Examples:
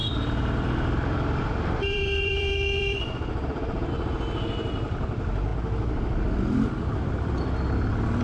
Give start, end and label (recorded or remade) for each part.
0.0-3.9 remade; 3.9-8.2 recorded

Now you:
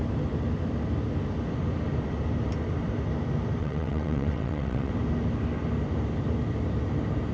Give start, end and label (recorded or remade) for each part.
0.0-3.6 recorded; 3.6-4.9 remade; 4.9-7.3 recorded

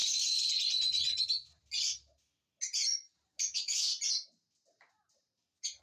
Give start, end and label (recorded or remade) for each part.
0.0-3.3 recorded; 3.3-3.9 remade; 3.9-5.8 recorded

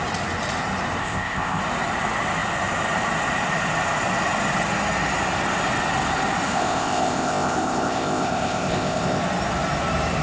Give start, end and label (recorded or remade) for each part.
0.0-1.0 recorded; 1.0-1.6 remade; 1.6-6.5 recorded; 6.5-9.2 remade; 9.2-10.2 recorded

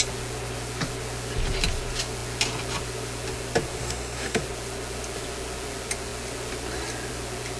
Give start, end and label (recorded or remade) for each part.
0.0-3.8 recorded; 3.8-4.4 remade; 4.4-7.6 recorded